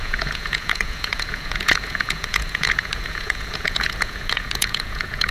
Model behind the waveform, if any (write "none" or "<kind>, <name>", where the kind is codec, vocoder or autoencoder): vocoder, Vocos